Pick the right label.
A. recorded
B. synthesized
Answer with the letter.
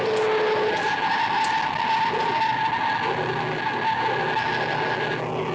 A